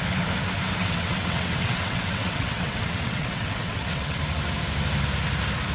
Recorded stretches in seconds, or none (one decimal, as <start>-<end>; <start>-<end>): 0.0-0.8; 4.2-5.7